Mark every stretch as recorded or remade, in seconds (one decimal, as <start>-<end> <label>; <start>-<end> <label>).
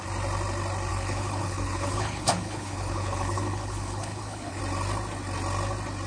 0.0-0.9 recorded; 0.9-4.6 remade; 4.6-6.1 recorded